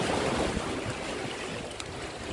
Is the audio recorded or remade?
remade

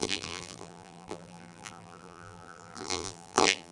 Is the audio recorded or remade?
remade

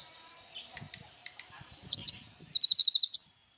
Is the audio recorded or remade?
remade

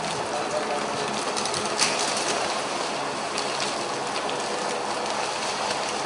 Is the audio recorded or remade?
recorded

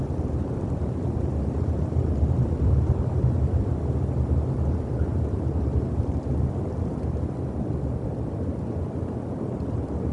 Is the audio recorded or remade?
remade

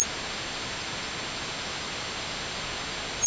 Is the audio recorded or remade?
recorded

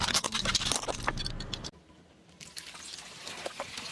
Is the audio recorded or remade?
recorded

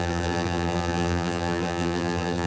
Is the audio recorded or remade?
remade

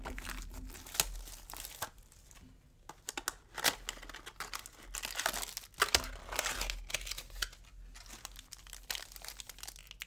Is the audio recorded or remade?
recorded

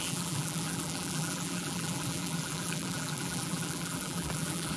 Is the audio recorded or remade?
remade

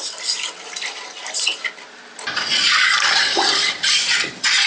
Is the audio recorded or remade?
remade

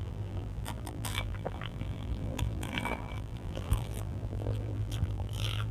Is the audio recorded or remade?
remade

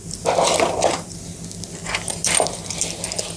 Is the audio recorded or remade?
recorded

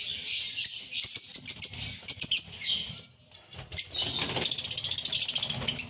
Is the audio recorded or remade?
recorded